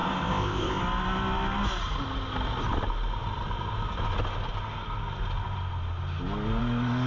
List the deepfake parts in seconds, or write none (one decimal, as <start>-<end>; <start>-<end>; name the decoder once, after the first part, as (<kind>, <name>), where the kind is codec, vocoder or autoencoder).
0.0-0.8 (codec, ZipCodec)